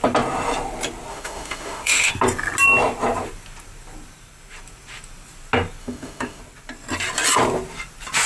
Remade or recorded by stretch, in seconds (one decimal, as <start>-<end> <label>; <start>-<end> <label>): 0.0-1.1 recorded; 1.1-2.1 remade; 2.1-5.8 recorded; 5.8-6.4 remade; 6.4-8.3 recorded